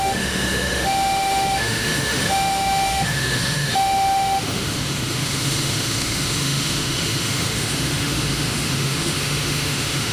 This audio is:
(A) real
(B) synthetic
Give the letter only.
B